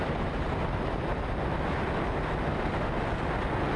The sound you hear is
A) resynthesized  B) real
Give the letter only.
B